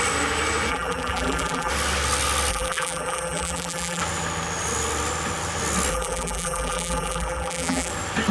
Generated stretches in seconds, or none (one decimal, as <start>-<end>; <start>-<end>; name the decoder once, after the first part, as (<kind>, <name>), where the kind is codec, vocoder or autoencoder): 0.7-1.7 (vocoder, BigVGAN v2); 2.5-4.0; 5.9-7.9